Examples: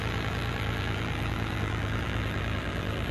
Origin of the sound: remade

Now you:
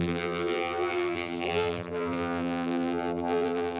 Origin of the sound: remade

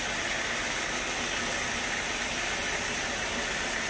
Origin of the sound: recorded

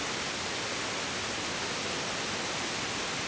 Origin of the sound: recorded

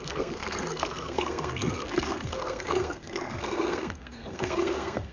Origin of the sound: remade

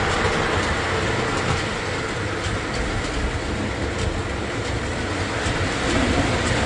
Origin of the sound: recorded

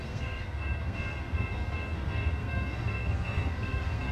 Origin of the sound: remade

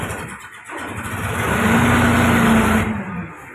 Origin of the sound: recorded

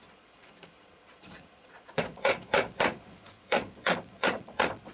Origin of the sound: remade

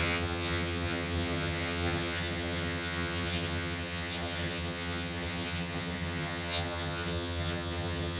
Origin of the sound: remade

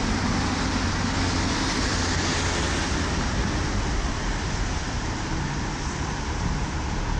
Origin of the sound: recorded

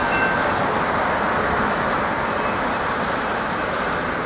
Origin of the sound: recorded